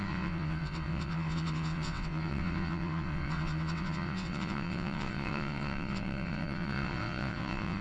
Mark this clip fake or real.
fake